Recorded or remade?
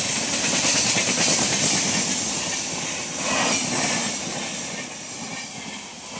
recorded